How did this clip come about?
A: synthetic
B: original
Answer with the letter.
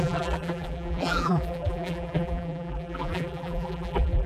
A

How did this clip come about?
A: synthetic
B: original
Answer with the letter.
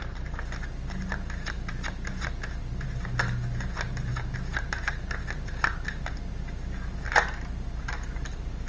B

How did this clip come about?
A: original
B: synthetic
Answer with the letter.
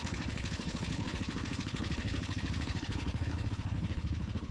B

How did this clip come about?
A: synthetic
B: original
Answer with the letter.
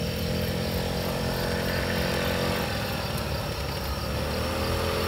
B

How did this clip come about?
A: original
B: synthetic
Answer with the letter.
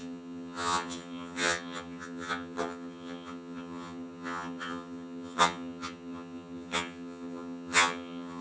B